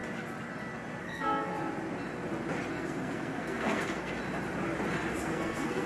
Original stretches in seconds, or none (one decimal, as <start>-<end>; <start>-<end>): 0.0-1.0; 1.5-2.7; 4.2-5.1